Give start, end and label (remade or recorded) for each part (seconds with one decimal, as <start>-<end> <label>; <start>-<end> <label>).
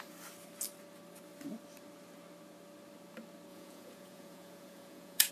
0.0-3.5 recorded; 3.5-5.3 remade